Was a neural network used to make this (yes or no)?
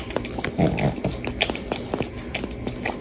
no